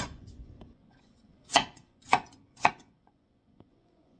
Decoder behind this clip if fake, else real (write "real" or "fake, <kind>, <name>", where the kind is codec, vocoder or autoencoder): fake, vocoder, Vocos